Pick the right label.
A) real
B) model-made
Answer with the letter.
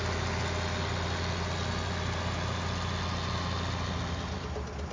A